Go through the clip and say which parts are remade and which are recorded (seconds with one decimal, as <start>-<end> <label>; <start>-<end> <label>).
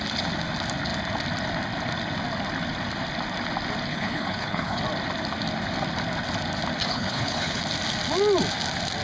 0.0-3.9 recorded; 3.9-4.8 remade; 4.8-6.9 recorded; 6.9-7.6 remade; 7.6-9.0 recorded